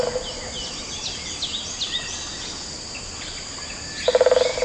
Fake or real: real